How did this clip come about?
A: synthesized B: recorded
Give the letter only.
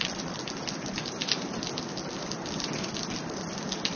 B